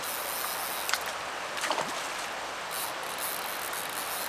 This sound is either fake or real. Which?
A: real